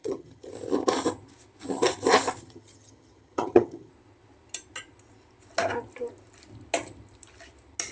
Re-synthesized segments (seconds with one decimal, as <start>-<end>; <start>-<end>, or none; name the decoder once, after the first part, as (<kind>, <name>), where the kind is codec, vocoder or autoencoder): 0.0-0.5 (vocoder, HiFi-GAN); 2.4-3.9